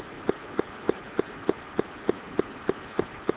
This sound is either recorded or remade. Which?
recorded